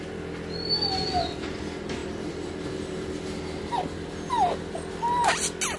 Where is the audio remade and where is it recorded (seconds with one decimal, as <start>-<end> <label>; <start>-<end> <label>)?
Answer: 0.0-5.8 recorded